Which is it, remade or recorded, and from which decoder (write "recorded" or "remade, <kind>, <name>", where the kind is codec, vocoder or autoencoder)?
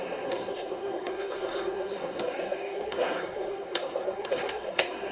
remade, codec, SNAC